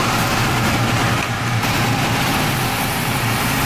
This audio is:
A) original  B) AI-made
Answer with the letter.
B